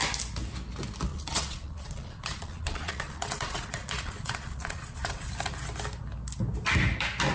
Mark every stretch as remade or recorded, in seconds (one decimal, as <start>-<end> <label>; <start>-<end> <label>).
0.0-1.1 recorded; 1.1-5.3 remade; 5.3-7.3 recorded